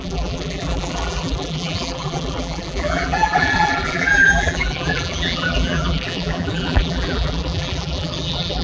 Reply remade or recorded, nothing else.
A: remade